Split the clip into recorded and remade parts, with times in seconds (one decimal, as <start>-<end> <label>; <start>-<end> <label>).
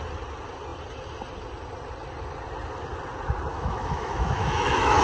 0.0-3.5 recorded; 3.5-5.0 remade